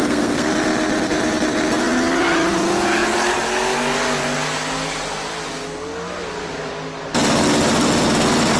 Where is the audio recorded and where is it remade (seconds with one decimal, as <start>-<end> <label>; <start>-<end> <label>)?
0.0-0.5 remade; 0.5-8.6 recorded

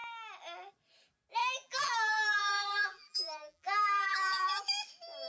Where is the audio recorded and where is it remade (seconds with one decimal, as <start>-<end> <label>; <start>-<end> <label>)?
0.0-1.4 recorded; 1.4-4.6 remade; 4.6-5.3 recorded

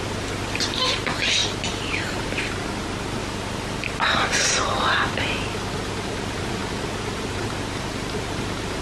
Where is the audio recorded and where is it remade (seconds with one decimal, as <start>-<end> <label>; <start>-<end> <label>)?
0.0-1.4 remade; 1.4-3.2 recorded; 3.2-8.8 remade

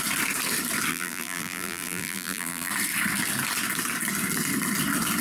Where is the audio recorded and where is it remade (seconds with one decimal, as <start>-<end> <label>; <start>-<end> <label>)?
0.0-0.9 recorded; 0.9-2.7 remade; 2.7-5.2 recorded

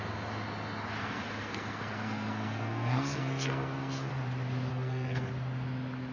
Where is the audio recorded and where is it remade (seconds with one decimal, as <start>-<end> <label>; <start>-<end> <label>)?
0.0-1.0 recorded; 1.0-4.1 remade; 4.1-4.7 recorded; 4.7-5.3 remade; 5.3-6.1 recorded

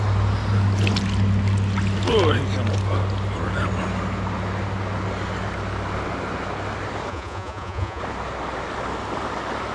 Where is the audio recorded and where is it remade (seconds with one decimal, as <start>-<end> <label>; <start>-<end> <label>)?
0.0-7.1 recorded; 7.1-8.0 remade; 8.0-9.7 recorded

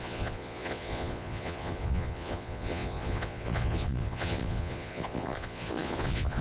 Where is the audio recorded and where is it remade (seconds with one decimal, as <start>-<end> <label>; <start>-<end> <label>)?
0.0-6.4 remade